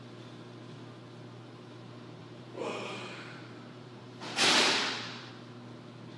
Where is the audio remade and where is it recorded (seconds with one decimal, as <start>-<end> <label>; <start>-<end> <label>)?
0.0-2.2 recorded; 2.2-5.3 remade; 5.3-6.2 recorded